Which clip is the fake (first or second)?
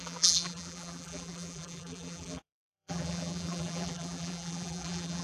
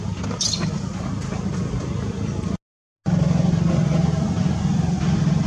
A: first